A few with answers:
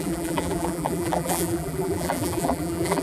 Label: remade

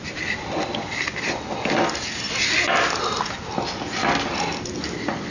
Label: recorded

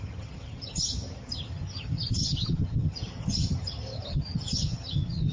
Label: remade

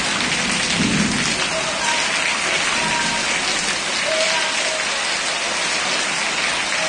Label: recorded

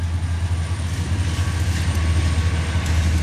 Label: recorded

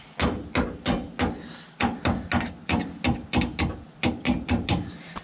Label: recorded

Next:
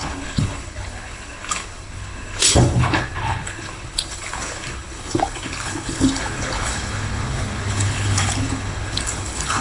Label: remade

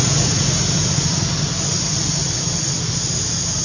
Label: recorded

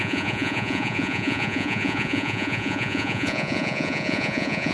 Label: remade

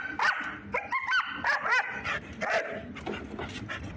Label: recorded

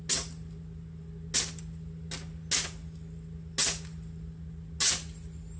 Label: recorded